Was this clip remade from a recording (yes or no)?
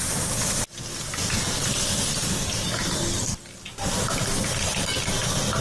no